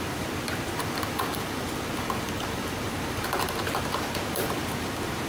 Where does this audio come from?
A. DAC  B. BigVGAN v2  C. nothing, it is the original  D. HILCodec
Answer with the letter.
B